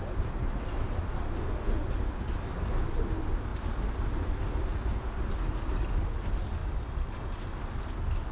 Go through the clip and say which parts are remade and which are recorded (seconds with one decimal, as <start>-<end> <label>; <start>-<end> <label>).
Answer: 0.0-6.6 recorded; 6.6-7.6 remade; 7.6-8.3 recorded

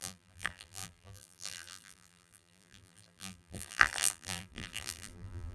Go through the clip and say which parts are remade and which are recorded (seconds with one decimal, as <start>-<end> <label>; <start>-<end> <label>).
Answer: 0.0-5.5 remade

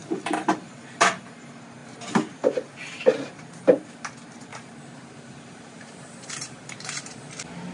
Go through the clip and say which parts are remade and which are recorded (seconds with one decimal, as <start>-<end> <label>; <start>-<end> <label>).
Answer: 0.0-1.1 remade; 1.1-4.5 recorded; 4.5-7.3 remade; 7.3-7.7 recorded